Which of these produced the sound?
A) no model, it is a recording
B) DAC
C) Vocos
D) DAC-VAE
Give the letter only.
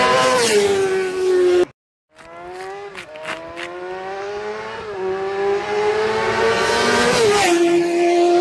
A